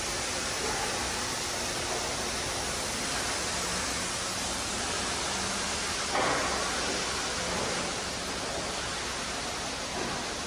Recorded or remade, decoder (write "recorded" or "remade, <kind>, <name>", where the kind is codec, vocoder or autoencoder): recorded